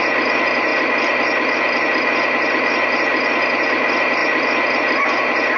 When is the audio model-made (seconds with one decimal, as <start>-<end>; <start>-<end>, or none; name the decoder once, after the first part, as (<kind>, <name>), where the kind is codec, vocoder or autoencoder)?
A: 0.7-1.6 (vocoder, BigVGAN v2); 4.2-4.8